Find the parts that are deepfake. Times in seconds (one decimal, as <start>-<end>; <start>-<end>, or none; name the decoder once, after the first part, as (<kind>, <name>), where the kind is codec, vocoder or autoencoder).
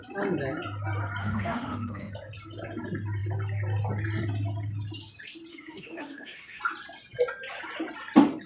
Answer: 1.2-2.1 (autoencoder, DAC-VAE); 5.5-6.6